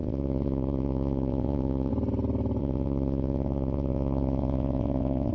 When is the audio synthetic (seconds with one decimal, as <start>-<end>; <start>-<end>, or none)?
0.0-1.9; 2.6-5.3